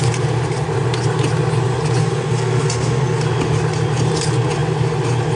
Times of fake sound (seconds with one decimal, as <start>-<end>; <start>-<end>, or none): 2.0-3.2